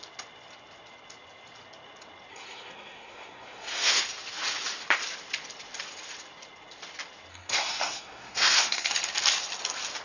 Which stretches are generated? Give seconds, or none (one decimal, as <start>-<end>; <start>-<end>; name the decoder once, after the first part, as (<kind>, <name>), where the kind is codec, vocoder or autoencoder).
2.3-3.9 (codec, SNAC); 7.3-8.9